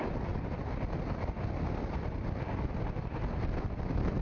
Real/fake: real